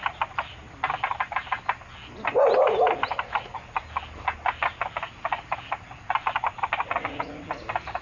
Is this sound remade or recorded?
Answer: recorded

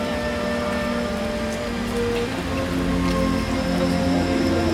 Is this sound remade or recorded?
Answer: recorded